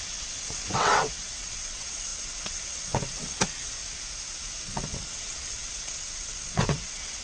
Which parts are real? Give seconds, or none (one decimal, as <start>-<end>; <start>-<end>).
3.8-4.6